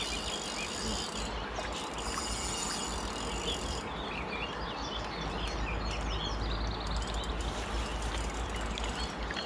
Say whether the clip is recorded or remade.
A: recorded